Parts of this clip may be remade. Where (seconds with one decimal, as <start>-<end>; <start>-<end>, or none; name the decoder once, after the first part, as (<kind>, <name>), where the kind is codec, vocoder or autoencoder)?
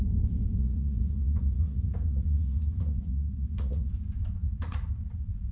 0.6-3.9 (vocoder, Vocos); 4.4-4.9